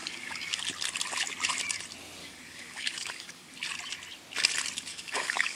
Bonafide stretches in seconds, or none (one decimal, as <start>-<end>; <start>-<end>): 0.6-2.2; 3.5-4.9